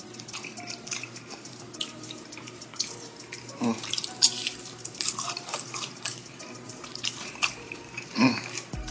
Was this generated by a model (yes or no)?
yes